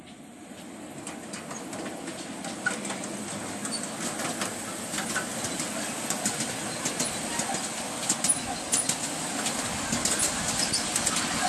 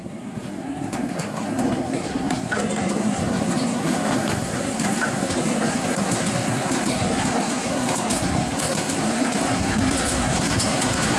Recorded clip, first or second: first